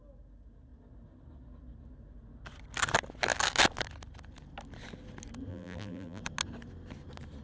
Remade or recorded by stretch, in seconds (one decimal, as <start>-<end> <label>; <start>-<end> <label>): 0.0-5.5 recorded; 5.5-6.2 remade; 6.2-7.4 recorded